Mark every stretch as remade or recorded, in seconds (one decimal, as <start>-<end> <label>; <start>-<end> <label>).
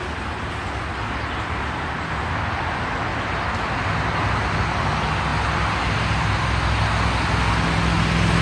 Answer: 0.0-8.4 recorded